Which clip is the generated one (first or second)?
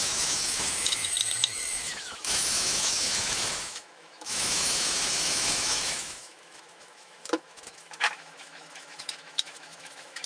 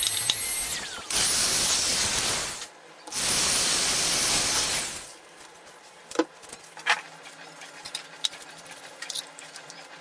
first